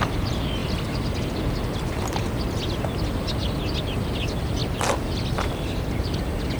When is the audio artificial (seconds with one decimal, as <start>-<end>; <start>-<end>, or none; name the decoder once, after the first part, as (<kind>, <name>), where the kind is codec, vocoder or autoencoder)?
none